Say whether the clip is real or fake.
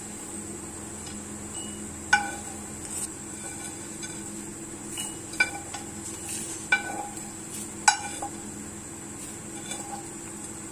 real